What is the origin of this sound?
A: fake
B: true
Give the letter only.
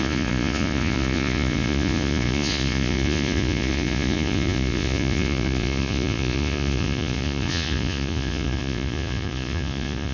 A